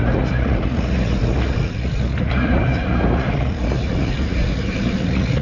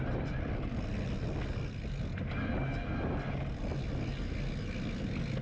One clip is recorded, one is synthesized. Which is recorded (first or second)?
second